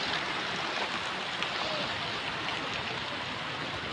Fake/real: real